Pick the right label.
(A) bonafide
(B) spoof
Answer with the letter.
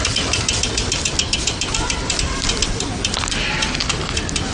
B